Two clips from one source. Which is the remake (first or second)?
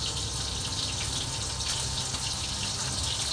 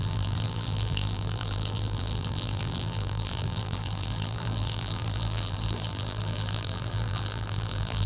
second